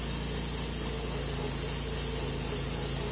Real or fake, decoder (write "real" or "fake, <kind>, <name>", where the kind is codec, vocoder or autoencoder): real